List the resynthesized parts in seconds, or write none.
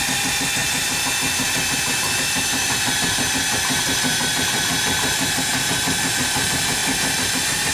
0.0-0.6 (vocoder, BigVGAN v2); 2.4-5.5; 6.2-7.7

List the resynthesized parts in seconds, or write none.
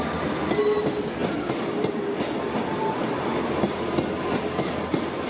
none